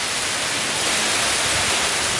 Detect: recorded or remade recorded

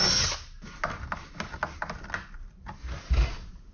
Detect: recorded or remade recorded